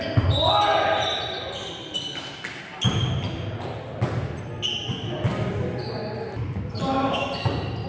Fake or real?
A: real